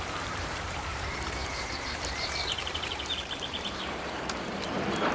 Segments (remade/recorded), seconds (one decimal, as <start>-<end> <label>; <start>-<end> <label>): 0.0-5.1 remade

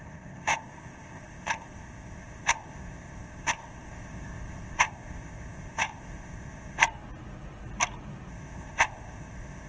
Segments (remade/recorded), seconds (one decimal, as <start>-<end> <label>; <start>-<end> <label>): 0.0-6.8 remade; 6.8-8.3 recorded; 8.3-9.7 remade

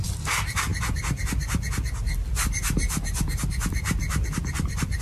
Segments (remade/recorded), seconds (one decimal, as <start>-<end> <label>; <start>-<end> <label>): 0.0-5.0 recorded

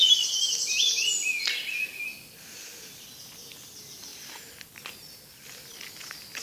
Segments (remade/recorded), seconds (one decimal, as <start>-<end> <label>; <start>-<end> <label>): 0.0-6.4 recorded

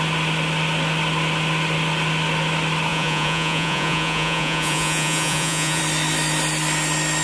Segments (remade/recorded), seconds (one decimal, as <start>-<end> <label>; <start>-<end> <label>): 0.0-2.9 recorded; 2.9-5.8 remade; 5.8-7.2 recorded